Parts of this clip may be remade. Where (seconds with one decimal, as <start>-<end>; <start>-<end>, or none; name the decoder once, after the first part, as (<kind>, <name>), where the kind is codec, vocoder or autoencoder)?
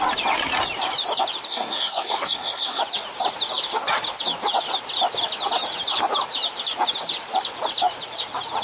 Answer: 1.5-2.8 (codec, SNAC)